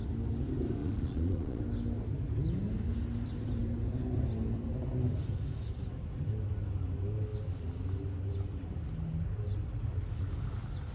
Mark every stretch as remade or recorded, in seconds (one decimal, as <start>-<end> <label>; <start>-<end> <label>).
0.0-0.8 recorded; 0.8-1.6 remade; 1.6-10.9 recorded